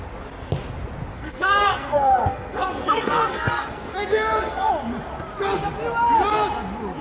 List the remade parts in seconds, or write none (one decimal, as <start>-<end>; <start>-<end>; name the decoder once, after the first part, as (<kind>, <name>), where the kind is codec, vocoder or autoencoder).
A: 1.1-4.7 (codec, SNAC)